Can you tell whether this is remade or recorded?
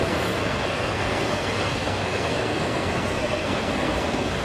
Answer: remade